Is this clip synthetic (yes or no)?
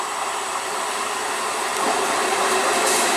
no